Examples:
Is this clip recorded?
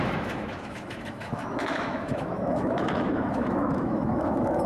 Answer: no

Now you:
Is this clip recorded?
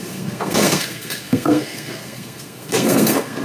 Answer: no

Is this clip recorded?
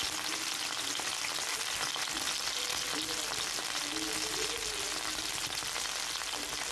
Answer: yes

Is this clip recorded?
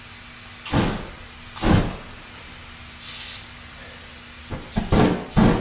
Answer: yes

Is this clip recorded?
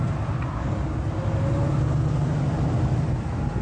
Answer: yes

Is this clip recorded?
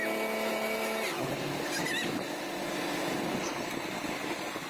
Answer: yes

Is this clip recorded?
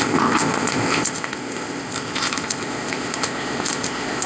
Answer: no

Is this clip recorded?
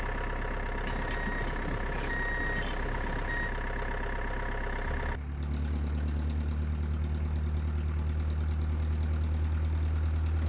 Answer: yes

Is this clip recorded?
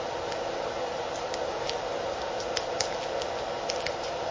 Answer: yes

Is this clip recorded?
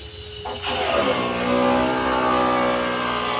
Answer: yes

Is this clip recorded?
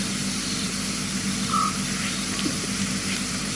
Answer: yes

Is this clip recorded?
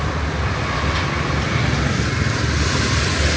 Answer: yes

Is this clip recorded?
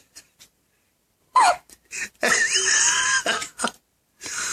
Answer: no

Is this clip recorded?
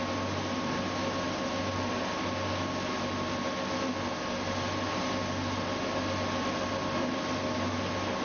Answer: yes